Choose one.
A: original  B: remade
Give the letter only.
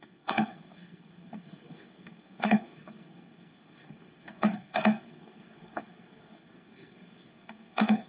B